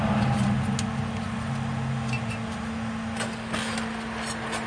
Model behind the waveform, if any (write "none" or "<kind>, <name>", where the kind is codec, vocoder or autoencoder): none